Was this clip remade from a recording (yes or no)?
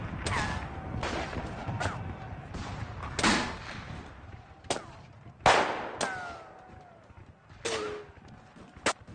no